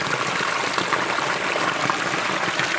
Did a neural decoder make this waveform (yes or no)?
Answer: no